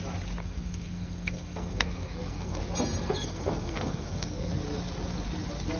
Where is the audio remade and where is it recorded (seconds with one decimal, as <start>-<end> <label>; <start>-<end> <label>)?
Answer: 0.0-0.4 recorded; 0.4-2.6 remade; 2.6-3.0 recorded; 3.0-4.5 remade; 4.5-5.8 recorded